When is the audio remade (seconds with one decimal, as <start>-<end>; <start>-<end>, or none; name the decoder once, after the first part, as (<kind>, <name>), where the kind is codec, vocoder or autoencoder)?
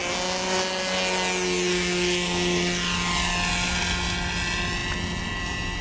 none